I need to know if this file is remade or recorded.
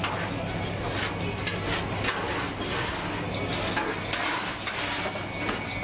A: recorded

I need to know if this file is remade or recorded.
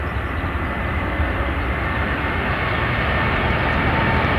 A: recorded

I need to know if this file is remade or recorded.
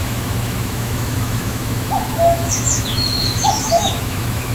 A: remade